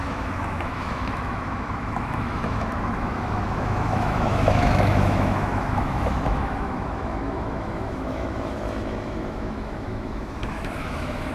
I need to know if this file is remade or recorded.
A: remade